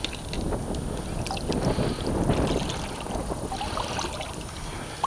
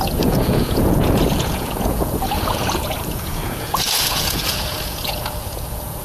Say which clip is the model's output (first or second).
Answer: second